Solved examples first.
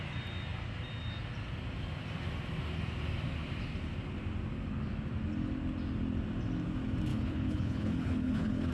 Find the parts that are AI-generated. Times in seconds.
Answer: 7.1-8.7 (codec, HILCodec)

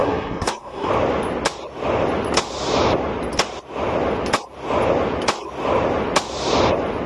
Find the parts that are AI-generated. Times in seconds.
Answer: 0.0-0.9 (codec, SNAC)